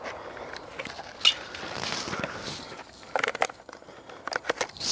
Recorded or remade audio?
recorded